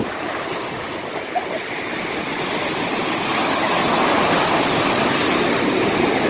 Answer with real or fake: real